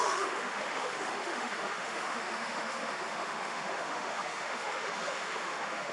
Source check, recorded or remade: remade